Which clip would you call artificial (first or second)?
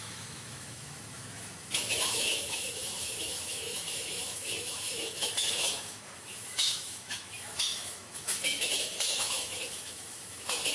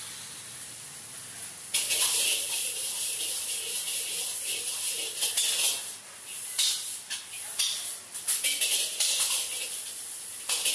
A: first